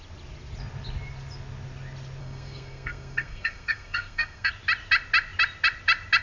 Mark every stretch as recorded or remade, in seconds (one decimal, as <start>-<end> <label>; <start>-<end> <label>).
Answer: 0.0-2.2 recorded; 2.2-4.5 remade; 4.5-6.2 recorded